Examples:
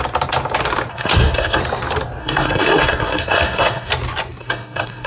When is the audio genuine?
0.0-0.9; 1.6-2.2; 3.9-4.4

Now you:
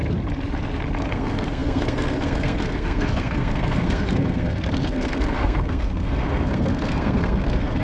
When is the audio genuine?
0.0-1.1

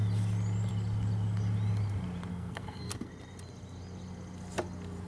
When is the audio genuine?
0.0-2.3; 3.1-5.1

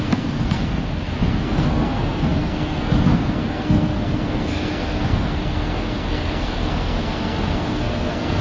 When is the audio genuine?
none

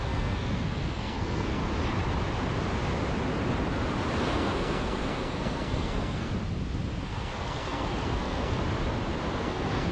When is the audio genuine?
1.6-4.2; 6.3-7.0; 8.6-9.4

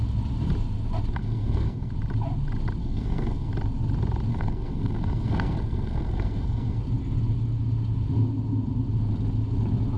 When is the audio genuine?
0.0-1.2; 1.9-2.8; 3.5-4.3; 6.8-10.0

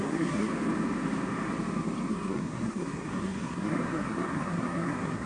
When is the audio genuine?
0.5-2.1

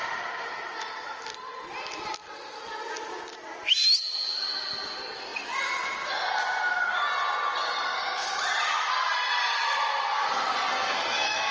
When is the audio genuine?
0.0-10.7